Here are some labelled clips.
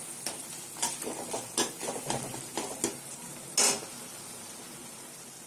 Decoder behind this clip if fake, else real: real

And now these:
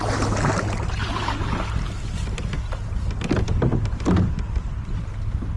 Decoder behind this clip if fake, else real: real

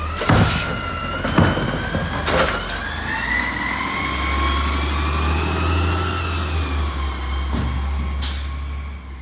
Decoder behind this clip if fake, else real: real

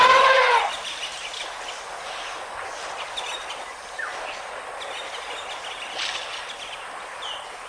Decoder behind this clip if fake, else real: real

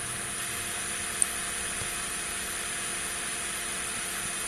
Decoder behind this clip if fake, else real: real